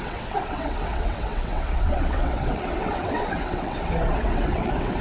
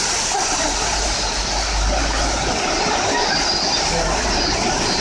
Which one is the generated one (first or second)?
first